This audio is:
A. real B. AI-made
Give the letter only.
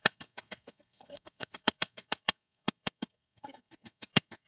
B